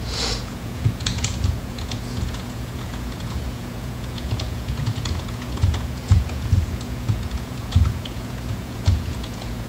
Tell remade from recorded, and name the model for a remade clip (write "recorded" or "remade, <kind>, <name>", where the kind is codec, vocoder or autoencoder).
remade, vocoder, Vocos